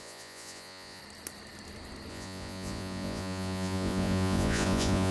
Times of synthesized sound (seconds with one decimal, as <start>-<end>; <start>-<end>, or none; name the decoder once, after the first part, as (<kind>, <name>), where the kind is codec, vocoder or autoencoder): 0.0-1.0 (vocoder, Vocos); 2.1-5.1